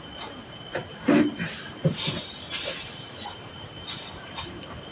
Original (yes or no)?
no